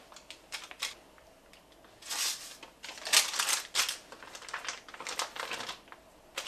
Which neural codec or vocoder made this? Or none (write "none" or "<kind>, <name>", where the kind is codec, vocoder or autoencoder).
none